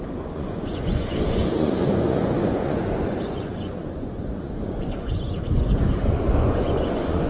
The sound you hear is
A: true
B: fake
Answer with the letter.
B